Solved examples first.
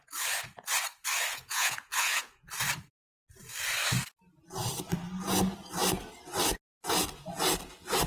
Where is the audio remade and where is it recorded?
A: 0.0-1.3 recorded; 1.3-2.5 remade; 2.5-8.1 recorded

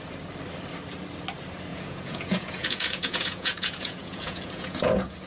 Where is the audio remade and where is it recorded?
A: 0.0-1.7 recorded; 1.7-5.3 remade